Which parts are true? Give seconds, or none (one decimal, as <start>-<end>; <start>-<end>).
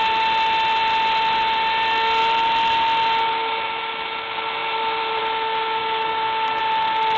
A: 0.0-5.8; 6.6-7.2